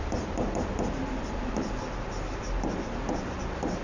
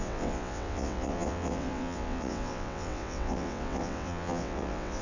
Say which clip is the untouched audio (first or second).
first